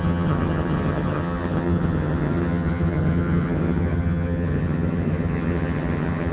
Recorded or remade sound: remade